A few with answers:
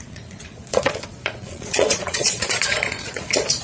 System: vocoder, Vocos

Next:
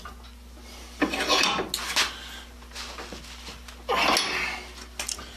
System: none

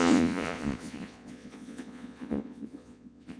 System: vocoder, Vocos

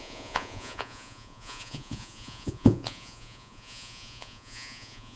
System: vocoder, Vocos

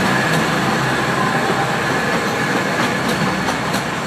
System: none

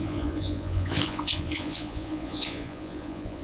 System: vocoder, Vocos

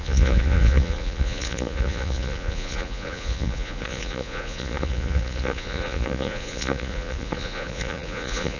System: vocoder, Vocos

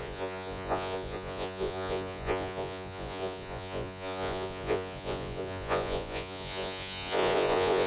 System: vocoder, Vocos